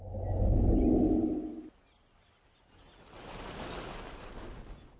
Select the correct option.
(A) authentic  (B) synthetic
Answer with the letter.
A